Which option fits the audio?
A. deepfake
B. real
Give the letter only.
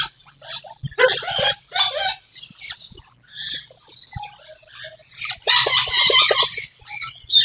B